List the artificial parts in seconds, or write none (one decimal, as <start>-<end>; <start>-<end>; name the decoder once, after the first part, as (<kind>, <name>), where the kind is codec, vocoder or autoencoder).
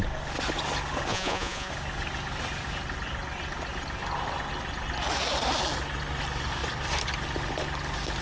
1.1-1.7 (vocoder, Vocos)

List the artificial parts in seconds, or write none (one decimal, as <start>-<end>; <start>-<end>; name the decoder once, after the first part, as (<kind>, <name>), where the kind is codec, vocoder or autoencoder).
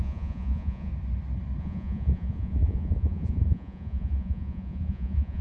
0.0-0.9 (vocoder, Vocos); 1.6-5.4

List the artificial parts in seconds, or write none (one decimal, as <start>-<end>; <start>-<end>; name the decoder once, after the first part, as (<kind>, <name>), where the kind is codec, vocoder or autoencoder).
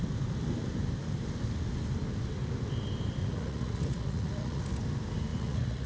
3.2-4.6 (vocoder, Vocos); 5.3-5.9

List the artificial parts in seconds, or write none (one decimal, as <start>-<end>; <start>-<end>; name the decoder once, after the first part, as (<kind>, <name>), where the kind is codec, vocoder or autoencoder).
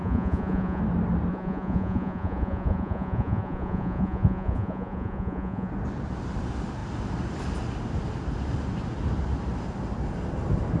0.0-0.8 (vocoder, Vocos); 1.3-5.7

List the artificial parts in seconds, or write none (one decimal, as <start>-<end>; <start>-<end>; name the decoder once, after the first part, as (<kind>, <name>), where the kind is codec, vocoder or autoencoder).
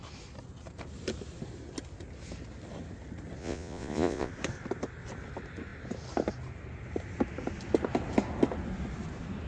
3.4-4.3 (vocoder, Vocos)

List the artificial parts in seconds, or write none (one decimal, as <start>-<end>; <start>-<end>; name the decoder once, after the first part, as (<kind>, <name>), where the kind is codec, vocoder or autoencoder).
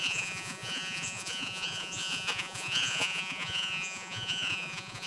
0.0-5.1 (vocoder, Vocos)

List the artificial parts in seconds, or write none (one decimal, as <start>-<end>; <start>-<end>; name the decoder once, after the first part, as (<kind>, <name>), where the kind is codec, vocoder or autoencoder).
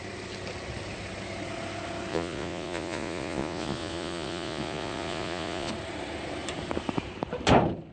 2.1-5.7 (vocoder, Vocos)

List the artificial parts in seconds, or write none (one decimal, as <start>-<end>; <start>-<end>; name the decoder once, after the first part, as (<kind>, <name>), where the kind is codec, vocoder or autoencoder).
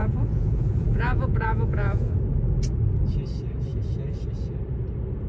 0.0-2.2 (vocoder, Vocos)